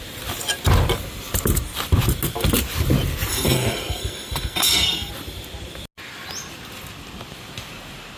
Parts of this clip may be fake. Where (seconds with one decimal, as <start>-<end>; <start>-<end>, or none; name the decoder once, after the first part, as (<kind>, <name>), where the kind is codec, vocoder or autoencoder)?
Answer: 3.3-5.1 (codec, SNAC)

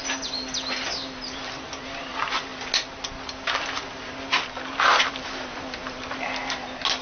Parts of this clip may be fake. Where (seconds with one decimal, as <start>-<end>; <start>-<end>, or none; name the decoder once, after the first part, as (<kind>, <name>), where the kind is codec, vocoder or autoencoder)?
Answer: none